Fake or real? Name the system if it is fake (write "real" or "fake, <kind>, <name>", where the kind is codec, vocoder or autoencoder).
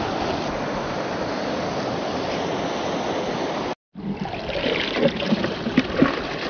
real